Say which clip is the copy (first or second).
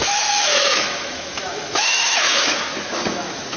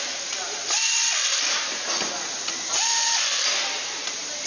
first